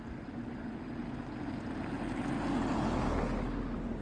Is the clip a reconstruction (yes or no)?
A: no